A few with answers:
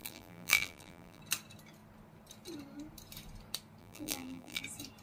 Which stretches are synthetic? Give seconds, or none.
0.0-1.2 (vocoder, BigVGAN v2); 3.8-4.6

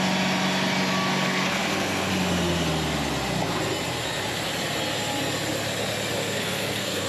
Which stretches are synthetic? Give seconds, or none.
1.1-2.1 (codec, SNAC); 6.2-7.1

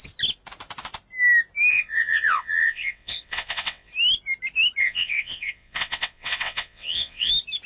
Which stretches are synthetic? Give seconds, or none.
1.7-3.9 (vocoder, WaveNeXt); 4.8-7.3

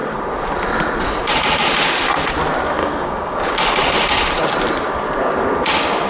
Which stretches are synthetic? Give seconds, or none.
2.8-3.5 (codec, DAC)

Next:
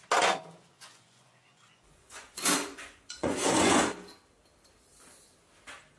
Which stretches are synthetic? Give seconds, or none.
0.7-3.8 (vocoder, Vocos)

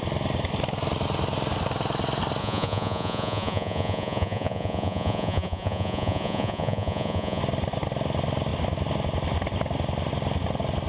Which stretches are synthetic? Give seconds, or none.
2.4-7.4 (vocoder, Vocos)

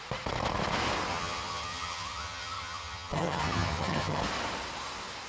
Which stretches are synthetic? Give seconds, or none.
1.1-4.2 (vocoder, HiFi-GAN)